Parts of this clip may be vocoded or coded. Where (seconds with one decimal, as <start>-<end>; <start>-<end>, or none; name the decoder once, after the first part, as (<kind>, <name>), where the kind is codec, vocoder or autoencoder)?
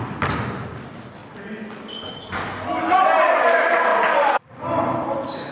none